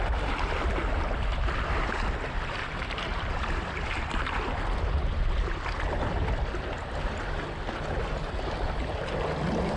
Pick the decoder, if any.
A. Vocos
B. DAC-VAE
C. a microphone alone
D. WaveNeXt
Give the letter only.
C